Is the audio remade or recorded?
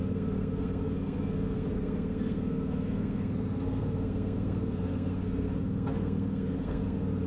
remade